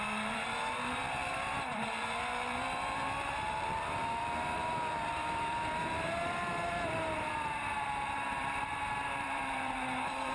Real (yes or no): no